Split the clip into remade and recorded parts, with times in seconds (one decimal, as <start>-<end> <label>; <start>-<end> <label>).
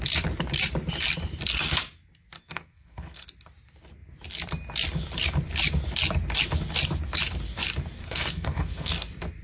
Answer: 0.0-2.4 recorded; 2.4-3.2 remade; 3.2-8.0 recorded; 8.0-8.9 remade; 8.9-9.4 recorded